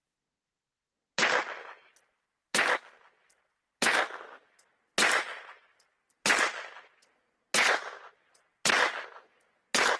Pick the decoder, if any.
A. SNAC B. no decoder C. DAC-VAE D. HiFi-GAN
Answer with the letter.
B